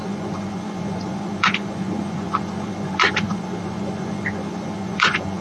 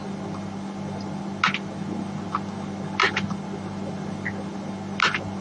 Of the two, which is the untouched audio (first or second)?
second